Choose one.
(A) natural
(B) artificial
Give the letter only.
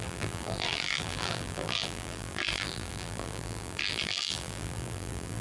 B